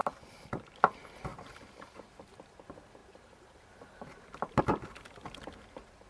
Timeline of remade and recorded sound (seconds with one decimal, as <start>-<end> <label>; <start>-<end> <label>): 0.0-0.8 remade; 0.8-1.3 recorded; 1.3-2.2 remade; 2.2-6.1 recorded